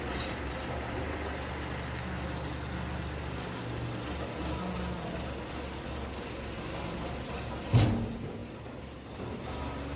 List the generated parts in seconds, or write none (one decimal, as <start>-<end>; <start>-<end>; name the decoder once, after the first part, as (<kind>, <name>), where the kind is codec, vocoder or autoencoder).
none